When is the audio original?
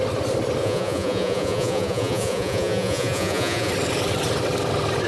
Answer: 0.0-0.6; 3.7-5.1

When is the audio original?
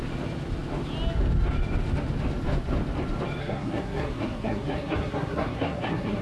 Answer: 0.0-3.4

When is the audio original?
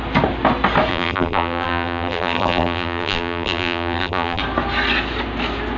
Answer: 0.0-0.9; 4.4-5.8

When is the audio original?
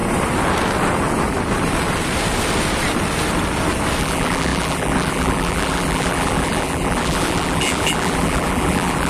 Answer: 0.0-4.0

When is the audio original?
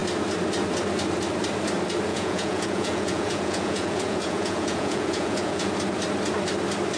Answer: 0.0-2.1; 5.7-7.0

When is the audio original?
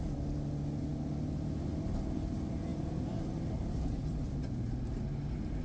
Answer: 0.0-2.7; 4.4-5.6